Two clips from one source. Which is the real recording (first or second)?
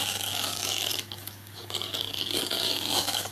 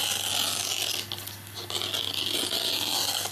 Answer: second